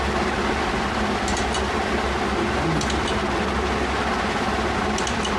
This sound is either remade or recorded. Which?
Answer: recorded